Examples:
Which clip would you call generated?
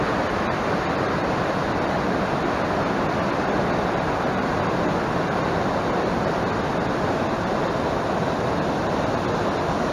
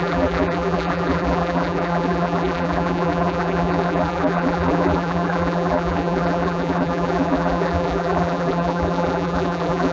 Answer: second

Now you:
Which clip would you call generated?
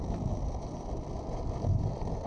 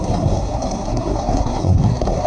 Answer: second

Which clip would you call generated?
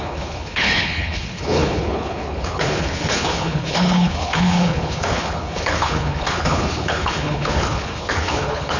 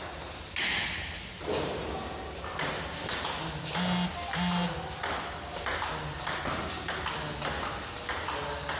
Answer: first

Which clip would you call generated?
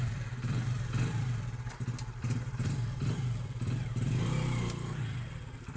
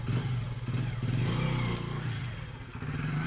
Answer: first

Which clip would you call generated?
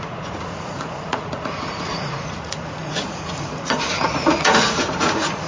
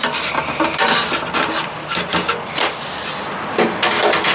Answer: first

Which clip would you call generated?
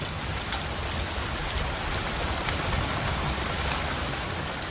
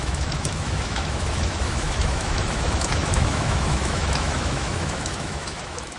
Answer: second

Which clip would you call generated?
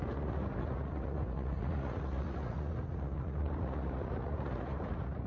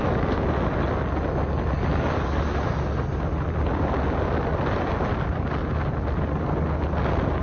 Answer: first